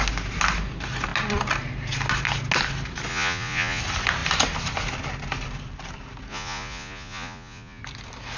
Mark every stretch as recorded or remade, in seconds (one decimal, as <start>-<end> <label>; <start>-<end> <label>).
0.0-3.1 recorded; 3.1-3.8 remade; 3.8-6.3 recorded; 6.3-7.8 remade; 7.8-8.4 recorded